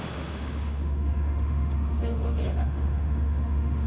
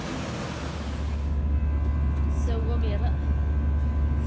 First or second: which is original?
second